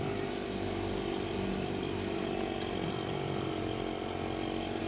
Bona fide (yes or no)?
yes